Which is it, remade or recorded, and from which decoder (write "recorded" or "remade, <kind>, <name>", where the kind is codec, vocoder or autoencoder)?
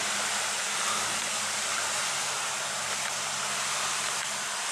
recorded